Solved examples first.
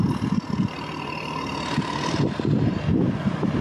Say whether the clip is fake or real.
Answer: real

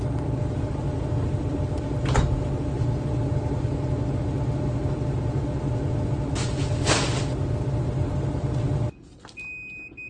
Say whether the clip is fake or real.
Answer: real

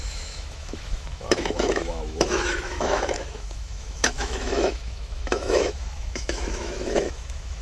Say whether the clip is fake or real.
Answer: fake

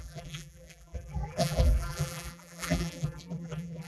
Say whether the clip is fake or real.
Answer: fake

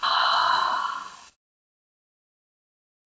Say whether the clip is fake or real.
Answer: fake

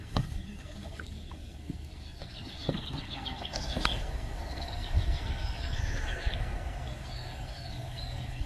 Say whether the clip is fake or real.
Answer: fake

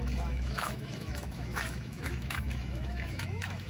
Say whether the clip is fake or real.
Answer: fake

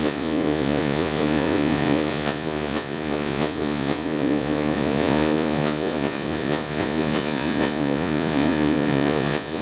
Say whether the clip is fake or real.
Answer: fake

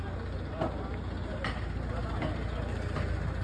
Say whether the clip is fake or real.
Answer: real